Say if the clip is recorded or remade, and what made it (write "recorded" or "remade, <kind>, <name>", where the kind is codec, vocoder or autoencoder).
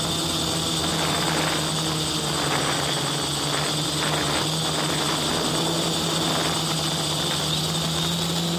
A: recorded